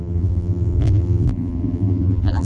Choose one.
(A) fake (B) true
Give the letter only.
A